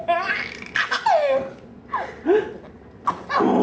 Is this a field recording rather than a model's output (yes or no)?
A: yes